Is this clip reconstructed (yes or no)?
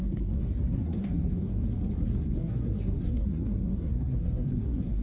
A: yes